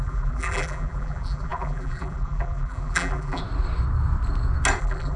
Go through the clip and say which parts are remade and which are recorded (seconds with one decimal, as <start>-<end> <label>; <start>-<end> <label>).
0.0-3.4 remade; 3.4-4.8 recorded; 4.8-5.2 remade